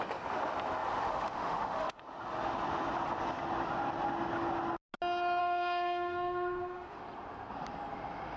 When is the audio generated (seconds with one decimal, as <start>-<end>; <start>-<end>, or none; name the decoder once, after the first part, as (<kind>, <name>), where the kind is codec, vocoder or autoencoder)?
1.1-2.0 (autoencoder, DAC-VAE); 5.4-7.0